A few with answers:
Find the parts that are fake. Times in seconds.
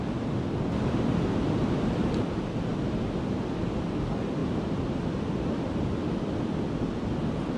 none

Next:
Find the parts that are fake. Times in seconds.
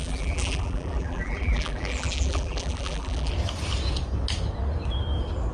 0.0-3.3 (vocoder, BigVGAN v2)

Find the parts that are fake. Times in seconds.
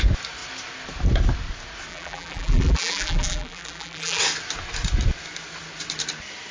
1.9-4.2 (vocoder, BigVGAN v2)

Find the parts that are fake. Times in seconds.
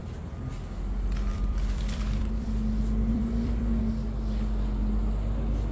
0.0-0.5 (vocoder, BigVGAN v2); 1.3-3.8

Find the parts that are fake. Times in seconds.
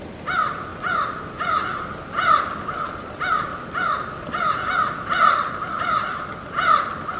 none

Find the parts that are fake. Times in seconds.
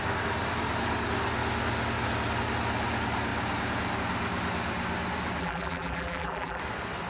5.4-6.6 (vocoder, BigVGAN v2)